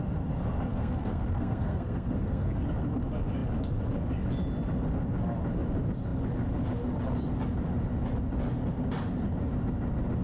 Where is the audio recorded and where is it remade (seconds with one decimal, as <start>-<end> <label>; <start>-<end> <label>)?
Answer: 0.0-0.7 recorded; 0.7-2.6 remade; 2.6-10.2 recorded